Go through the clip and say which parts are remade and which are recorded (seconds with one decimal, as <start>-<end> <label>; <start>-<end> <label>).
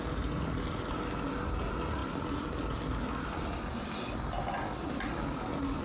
0.0-5.8 recorded